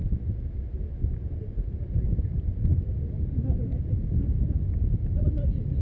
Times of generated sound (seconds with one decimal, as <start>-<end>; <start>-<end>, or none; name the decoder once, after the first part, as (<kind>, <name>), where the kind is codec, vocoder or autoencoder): none